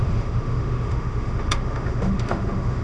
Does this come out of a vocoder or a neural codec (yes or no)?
yes